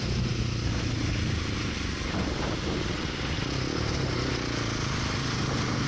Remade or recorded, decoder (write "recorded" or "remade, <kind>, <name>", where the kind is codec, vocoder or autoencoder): recorded